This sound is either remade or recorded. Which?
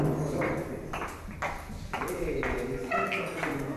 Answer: recorded